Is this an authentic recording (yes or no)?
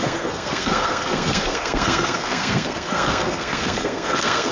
no